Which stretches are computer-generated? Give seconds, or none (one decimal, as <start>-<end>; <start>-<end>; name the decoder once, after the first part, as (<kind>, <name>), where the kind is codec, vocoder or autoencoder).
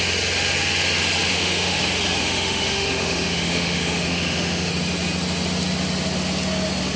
1.3-1.8 (autoencoder, DAC-VAE); 2.2-4.7